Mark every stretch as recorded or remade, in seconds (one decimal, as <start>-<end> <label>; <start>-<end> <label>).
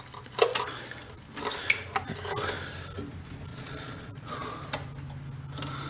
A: 0.0-3.5 recorded; 3.5-4.6 remade; 4.6-5.9 recorded